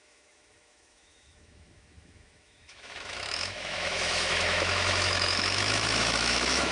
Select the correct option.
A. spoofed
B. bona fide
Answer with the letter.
A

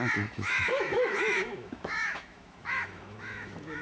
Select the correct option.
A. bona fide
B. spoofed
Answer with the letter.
B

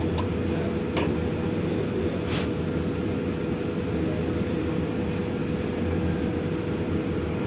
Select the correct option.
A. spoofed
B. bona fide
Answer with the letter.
B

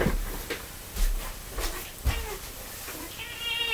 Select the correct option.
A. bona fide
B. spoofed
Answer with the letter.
A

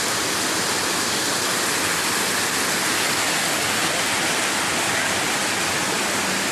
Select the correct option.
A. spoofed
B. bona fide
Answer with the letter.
B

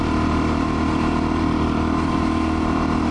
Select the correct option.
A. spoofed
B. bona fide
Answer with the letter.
B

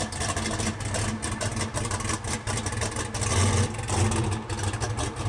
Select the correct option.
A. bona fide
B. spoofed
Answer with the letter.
A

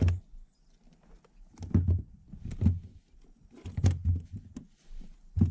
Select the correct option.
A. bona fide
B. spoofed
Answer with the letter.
A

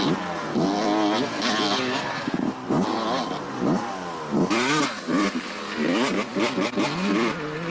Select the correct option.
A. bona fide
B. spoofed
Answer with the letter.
A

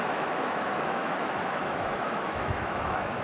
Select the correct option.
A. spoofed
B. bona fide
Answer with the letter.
A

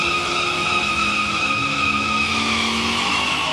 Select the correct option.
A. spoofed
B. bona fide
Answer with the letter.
A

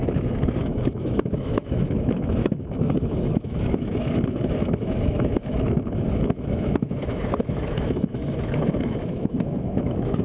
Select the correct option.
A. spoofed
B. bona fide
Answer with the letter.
A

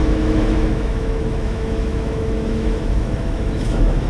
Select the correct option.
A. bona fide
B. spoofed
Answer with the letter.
B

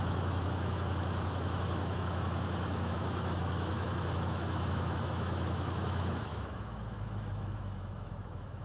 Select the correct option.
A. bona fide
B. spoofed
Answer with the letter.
B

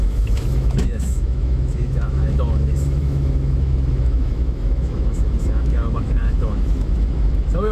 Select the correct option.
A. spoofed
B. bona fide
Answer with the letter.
A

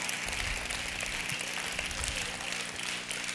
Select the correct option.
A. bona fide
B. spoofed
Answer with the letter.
A